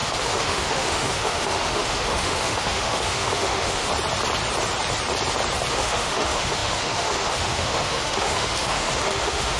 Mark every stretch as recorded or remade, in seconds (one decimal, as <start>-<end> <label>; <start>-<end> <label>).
0.0-3.9 remade; 3.9-5.7 recorded; 5.7-9.6 remade